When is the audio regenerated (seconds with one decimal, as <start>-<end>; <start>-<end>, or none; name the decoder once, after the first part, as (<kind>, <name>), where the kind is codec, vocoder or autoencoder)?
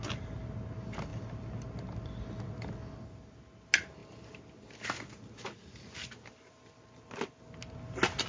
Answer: none